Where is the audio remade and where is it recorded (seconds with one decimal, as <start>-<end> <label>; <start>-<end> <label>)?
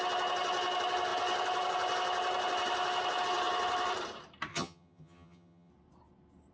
0.0-4.5 recorded; 4.5-5.7 remade; 5.7-6.5 recorded